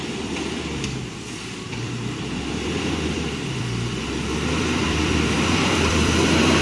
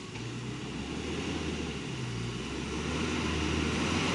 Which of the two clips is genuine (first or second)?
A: second